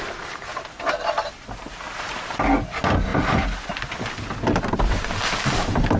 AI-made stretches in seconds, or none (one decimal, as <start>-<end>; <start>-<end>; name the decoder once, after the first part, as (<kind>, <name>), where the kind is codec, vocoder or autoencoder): none